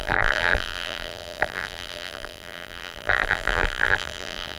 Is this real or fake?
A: fake